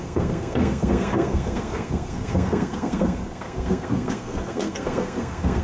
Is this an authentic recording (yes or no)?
no